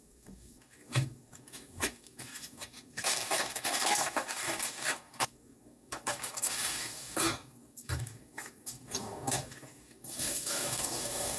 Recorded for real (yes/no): no